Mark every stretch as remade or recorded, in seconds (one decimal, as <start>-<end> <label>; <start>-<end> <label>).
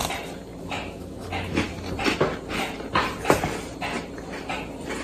0.0-0.6 recorded; 0.6-1.7 remade; 1.7-5.0 recorded